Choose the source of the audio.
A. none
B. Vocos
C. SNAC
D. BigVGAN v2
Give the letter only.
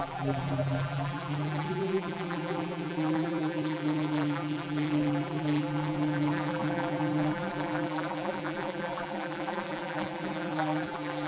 D